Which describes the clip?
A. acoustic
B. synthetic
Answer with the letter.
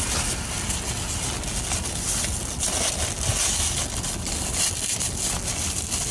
A